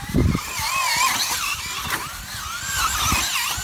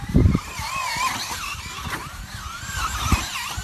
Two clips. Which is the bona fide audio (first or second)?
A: first